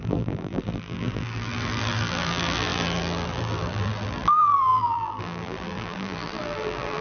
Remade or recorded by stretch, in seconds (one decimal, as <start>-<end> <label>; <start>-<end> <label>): 0.0-7.0 remade